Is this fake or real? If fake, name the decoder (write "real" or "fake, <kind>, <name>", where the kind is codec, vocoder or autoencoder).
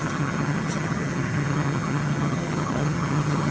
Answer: fake, vocoder, HiFi-GAN